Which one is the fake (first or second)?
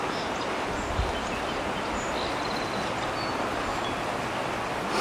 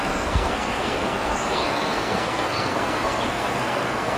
second